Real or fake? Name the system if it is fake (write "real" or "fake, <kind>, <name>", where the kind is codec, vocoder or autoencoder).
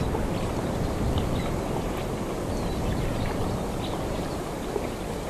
real